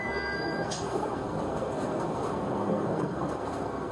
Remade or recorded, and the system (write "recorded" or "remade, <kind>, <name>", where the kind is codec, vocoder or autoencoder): remade, codec, SNAC